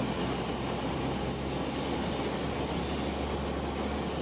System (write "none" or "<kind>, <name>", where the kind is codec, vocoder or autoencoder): none